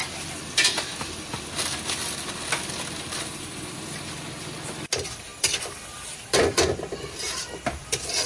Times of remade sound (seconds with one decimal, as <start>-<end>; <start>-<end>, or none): none